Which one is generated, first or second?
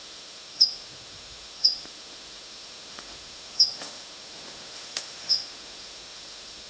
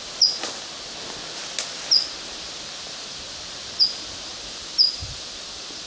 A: first